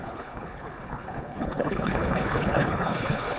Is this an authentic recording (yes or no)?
no